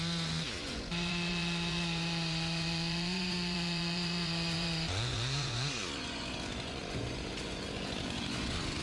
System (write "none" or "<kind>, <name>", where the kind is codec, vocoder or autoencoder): vocoder, Vocos